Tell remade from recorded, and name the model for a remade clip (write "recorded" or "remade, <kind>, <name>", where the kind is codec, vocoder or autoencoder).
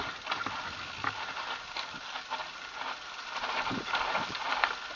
recorded